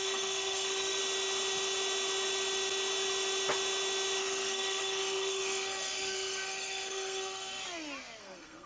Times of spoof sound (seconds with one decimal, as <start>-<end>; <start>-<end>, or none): 0.0-1.0; 4.2-7.6; 8.2-8.7